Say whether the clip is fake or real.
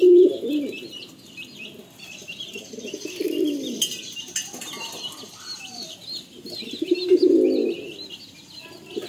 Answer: real